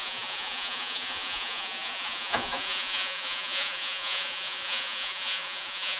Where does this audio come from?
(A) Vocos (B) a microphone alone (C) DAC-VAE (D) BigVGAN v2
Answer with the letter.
A